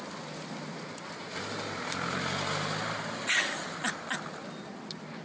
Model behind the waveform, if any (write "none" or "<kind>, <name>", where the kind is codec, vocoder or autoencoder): none